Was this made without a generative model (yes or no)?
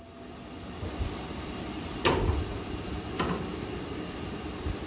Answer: yes